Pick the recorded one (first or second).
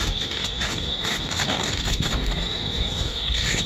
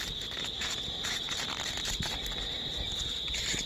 second